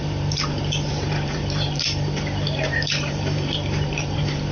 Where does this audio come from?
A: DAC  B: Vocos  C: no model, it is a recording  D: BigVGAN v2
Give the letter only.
D